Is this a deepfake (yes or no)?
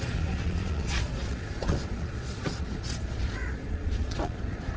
yes